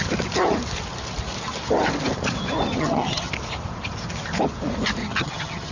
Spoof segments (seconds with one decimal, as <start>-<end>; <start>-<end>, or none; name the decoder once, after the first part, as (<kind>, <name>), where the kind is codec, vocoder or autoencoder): 2.7-3.3 (vocoder, HiFi-GAN); 5.0-5.7